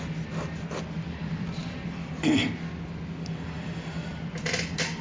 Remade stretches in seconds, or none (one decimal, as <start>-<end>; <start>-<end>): 1.2-2.1; 4.1-5.0